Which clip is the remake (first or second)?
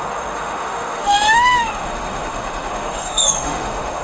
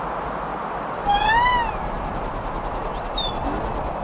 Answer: first